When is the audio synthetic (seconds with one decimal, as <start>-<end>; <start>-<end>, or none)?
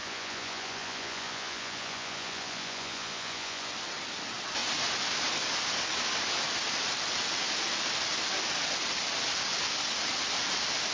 0.0-3.7